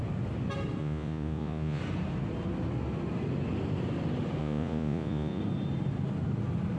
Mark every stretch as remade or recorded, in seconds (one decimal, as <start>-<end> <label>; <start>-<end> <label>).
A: 0.0-0.8 recorded; 0.8-1.8 remade; 1.8-4.4 recorded; 4.4-5.4 remade; 5.4-6.8 recorded